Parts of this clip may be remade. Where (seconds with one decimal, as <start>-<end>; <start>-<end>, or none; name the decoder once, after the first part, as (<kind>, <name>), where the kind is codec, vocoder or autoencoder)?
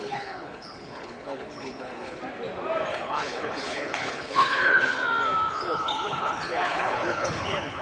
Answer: 0.0-2.2 (codec, HILCodec); 2.9-5.0; 5.5-7.8